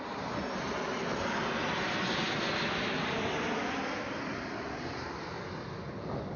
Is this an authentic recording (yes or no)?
yes